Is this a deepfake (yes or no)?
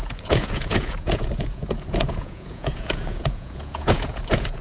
yes